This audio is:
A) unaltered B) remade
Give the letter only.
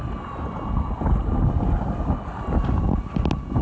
A